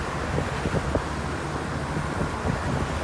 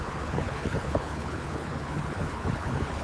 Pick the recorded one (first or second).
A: first